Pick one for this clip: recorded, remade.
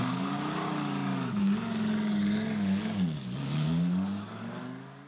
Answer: remade